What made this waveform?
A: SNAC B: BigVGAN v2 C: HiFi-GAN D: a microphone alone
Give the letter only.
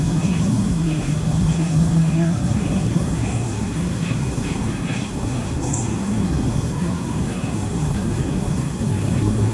A